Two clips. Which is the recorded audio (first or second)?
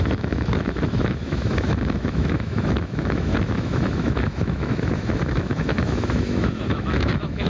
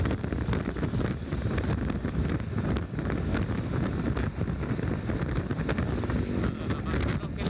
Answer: second